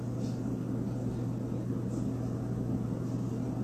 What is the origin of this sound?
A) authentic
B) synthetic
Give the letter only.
A